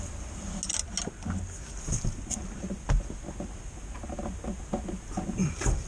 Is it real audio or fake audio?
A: real